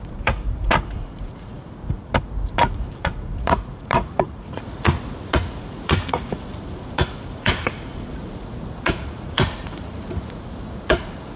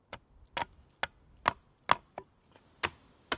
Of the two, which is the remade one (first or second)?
first